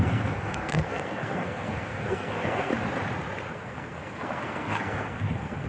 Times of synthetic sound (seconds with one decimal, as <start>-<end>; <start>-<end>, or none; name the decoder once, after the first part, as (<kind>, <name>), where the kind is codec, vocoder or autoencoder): 0.0-2.7 (codec, SNAC); 3.5-5.7